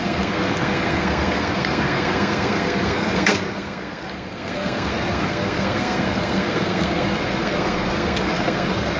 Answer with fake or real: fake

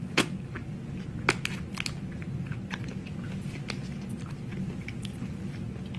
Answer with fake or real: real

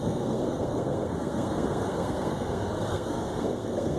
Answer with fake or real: fake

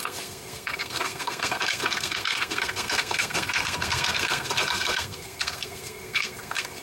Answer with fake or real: fake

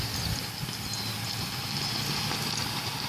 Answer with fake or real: real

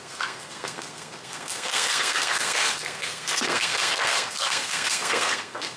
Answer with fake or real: fake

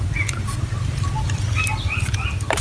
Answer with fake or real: real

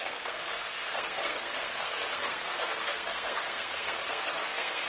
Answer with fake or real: fake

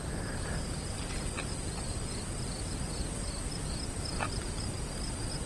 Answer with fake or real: real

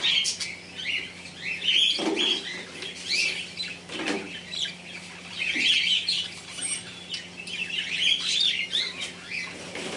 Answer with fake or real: real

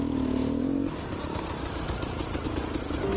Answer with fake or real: real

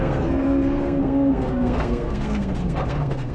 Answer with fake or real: fake